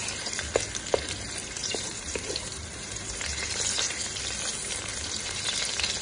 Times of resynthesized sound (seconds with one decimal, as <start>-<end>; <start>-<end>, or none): 1.6-4.2; 4.9-5.4